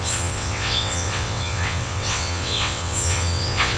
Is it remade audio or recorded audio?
remade